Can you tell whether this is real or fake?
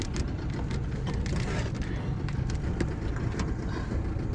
real